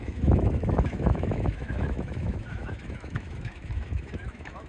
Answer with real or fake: fake